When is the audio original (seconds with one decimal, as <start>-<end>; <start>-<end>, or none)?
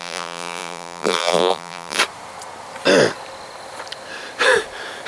2.0-5.1